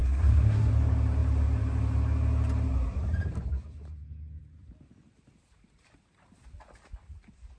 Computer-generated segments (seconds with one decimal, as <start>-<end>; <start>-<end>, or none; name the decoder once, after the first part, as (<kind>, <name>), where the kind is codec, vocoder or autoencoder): 0.0-0.7 (codec, SNAC)